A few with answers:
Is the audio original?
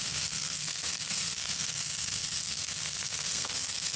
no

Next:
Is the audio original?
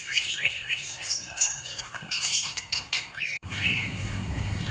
no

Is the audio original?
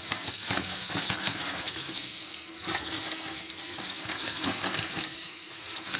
no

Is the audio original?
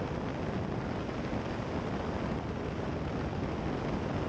yes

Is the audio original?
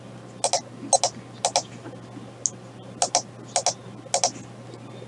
yes